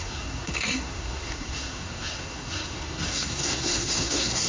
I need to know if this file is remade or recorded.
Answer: remade